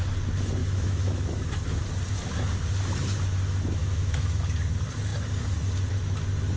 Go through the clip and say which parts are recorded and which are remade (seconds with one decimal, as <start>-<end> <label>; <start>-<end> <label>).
0.0-0.6 recorded; 0.6-1.8 remade; 1.8-3.8 recorded; 3.8-4.4 remade; 4.4-6.6 recorded